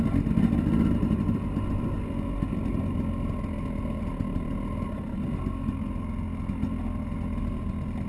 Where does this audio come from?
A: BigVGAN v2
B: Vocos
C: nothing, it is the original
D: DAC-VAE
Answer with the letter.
C